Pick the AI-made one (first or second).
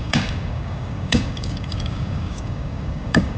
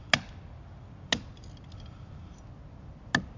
first